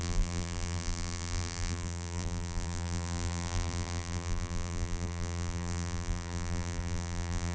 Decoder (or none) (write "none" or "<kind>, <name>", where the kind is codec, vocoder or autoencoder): vocoder, BigVGAN v2